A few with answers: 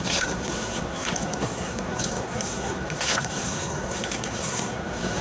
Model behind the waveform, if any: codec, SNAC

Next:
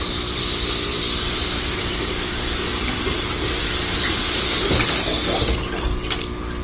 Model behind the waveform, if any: none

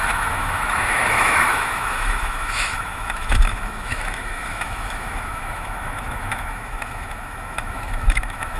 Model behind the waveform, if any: autoencoder, DAC-VAE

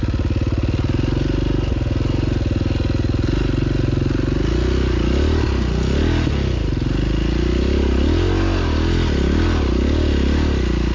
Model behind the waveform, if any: none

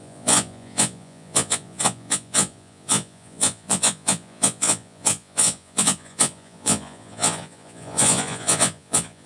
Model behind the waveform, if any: vocoder, Vocos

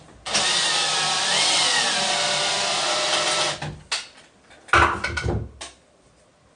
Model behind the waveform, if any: none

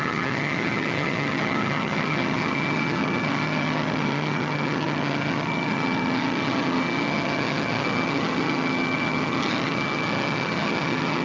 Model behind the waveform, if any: vocoder, HiFi-GAN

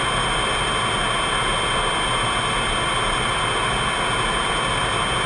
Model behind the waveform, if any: none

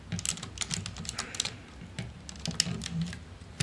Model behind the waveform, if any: none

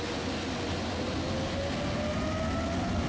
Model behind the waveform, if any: none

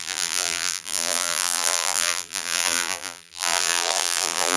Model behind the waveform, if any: vocoder, BigVGAN v2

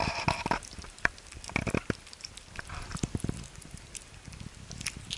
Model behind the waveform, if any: none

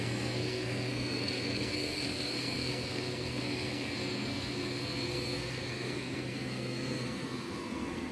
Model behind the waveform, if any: codec, SNAC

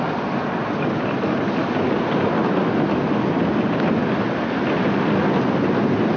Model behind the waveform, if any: none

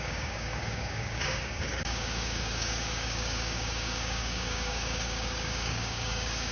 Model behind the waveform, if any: codec, DAC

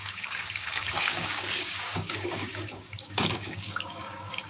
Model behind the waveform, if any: codec, DAC